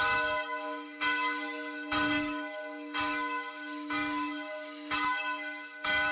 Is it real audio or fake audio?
fake